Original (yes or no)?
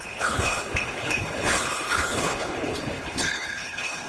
no